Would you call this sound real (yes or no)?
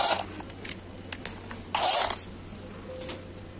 yes